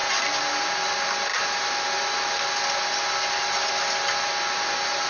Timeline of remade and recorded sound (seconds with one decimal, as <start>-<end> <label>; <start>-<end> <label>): 0.0-5.1 recorded